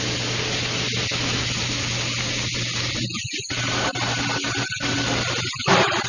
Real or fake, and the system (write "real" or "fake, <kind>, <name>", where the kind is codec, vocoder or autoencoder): real